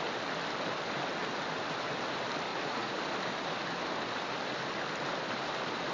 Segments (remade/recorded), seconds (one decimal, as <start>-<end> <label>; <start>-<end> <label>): 0.0-2.5 recorded; 2.5-3.0 remade; 3.0-5.9 recorded